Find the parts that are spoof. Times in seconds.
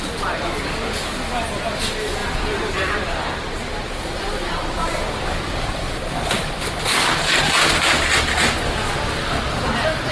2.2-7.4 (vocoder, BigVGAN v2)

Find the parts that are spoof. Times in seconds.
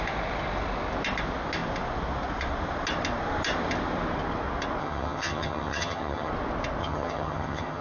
4.8-6.3 (vocoder, HiFi-GAN); 6.8-7.8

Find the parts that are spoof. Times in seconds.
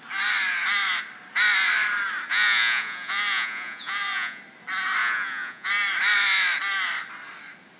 2.3-4.4 (vocoder, Vocos); 5.0-5.7